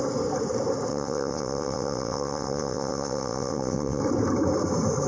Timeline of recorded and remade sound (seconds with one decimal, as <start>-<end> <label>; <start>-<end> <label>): 0.0-0.9 recorded; 0.9-4.0 remade; 4.0-5.1 recorded